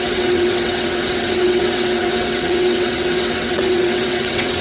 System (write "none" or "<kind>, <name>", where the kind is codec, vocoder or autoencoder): vocoder, WaveNeXt